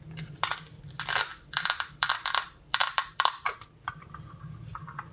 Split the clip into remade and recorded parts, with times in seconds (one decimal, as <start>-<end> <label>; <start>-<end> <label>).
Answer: 0.0-1.3 recorded; 1.3-4.4 remade; 4.4-5.1 recorded